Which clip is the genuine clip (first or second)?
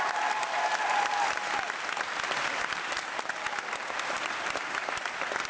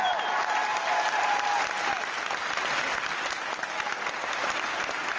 second